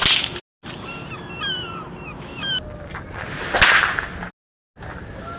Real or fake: real